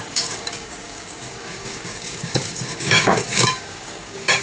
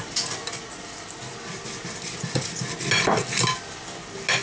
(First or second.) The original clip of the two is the second